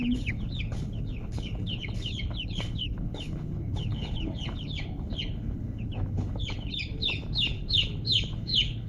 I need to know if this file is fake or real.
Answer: fake